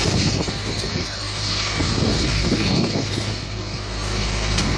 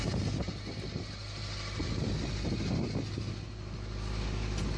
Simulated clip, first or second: first